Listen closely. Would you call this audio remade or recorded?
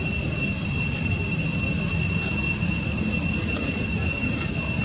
recorded